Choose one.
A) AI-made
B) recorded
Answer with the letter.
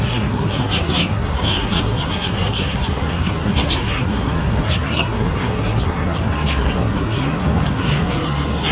A